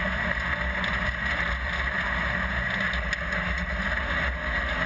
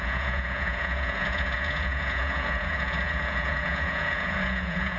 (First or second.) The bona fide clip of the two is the first